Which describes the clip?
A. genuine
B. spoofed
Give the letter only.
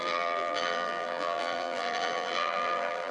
B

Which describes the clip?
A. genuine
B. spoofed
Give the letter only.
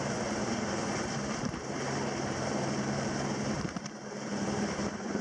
B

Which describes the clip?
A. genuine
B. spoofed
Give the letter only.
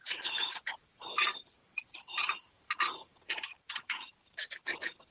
B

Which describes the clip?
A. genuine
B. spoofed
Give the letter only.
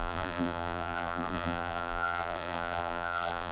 B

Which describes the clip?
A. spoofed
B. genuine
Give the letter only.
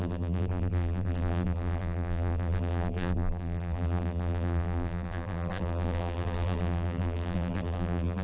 A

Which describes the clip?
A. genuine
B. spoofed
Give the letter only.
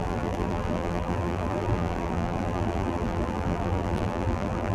B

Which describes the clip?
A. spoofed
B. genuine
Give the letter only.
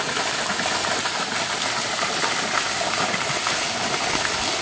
B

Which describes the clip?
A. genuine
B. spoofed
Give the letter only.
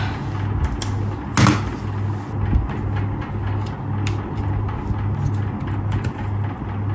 A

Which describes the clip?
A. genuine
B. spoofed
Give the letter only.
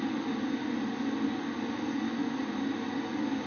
A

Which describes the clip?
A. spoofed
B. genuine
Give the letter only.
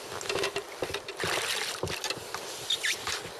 B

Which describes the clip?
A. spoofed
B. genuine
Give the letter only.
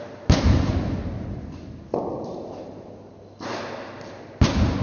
B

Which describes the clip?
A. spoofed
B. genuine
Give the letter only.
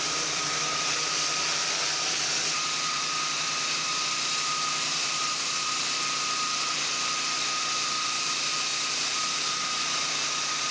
A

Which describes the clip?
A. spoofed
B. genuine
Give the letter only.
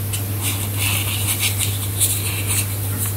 B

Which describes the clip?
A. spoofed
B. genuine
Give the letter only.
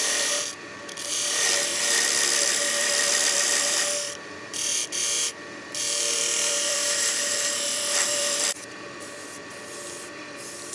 A